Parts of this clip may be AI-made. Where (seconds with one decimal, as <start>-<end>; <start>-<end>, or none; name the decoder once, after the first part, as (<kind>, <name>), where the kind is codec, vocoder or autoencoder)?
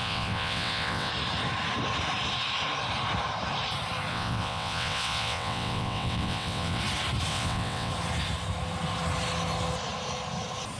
0.0-1.1 (vocoder, WaveNeXt); 4.1-6.8; 7.3-7.9